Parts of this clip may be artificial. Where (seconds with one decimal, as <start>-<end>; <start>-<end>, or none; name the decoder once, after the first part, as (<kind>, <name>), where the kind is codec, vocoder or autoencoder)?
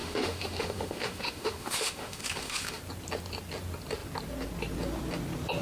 0.0-2.8 (autoencoder, DAC-VAE)